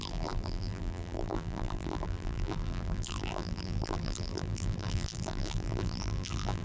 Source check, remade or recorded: remade